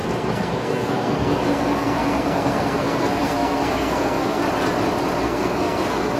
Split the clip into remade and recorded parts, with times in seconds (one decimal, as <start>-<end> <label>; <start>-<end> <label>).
0.0-4.4 remade; 4.4-5.2 recorded; 5.2-6.2 remade